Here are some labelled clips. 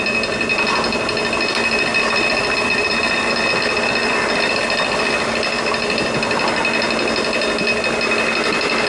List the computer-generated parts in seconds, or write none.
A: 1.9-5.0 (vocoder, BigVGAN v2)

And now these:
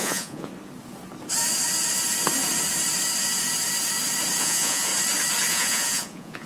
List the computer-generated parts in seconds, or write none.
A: 0.0-0.5 (vocoder, Vocos); 4.4-4.9; 5.5-6.5

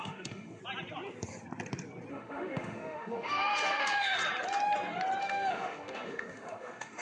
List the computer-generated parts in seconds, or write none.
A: 0.0-0.6 (autoencoder, DAC-VAE); 2.1-4.2; 5.2-7.0

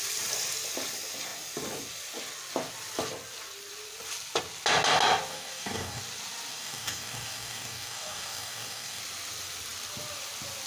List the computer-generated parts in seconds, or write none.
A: 5.3-6.0 (codec, DAC); 6.5-9.0

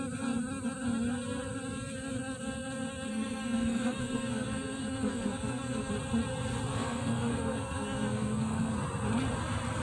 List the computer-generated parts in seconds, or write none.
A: 3.1-5.9 (codec, SNAC); 6.7-8.7

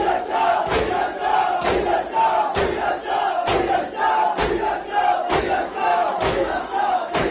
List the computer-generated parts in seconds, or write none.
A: 0.0-1.3 (autoencoder, DAC-VAE); 5.4-7.3

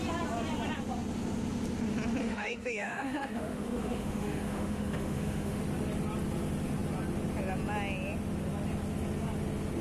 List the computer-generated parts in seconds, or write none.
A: 2.2-5.6 (autoencoder, DAC-VAE)